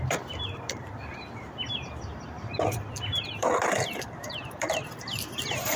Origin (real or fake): fake